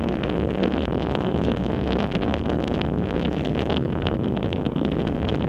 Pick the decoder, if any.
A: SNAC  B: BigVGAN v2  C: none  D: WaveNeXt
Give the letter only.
A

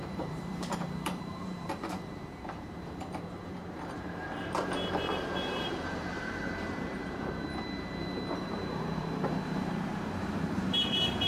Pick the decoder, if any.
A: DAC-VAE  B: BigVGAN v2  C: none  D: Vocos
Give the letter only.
B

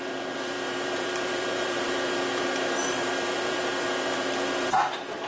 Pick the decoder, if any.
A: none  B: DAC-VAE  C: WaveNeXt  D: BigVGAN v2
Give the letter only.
D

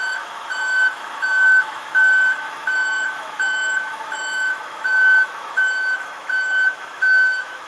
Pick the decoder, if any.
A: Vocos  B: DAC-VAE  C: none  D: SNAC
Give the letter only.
B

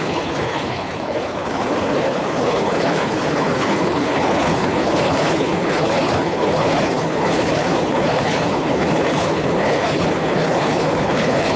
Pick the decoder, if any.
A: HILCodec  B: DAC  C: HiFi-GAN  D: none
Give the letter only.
A